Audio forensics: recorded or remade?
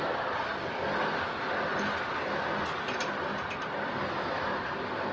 recorded